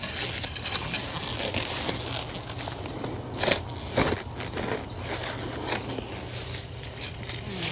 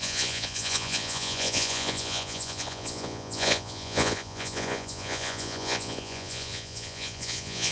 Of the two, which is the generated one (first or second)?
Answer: second